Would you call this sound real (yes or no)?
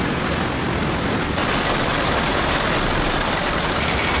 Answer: yes